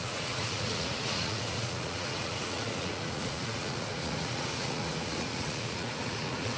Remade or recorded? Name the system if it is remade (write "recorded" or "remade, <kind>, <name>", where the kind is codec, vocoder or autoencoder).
remade, vocoder, Vocos